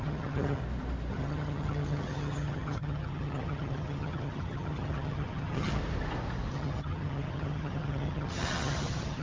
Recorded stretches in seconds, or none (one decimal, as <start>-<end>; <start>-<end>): 0.6-1.1; 5.8-6.5